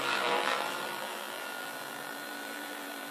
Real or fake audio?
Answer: fake